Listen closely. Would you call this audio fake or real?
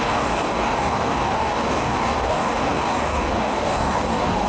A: fake